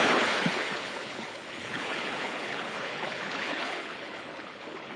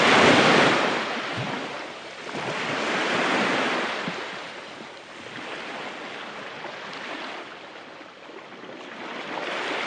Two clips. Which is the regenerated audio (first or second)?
first